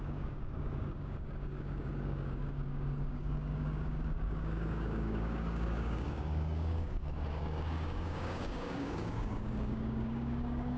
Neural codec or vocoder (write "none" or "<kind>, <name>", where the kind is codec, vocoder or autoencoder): codec, DAC